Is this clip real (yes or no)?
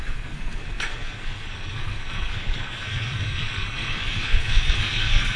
no